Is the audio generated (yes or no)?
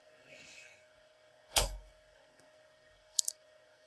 yes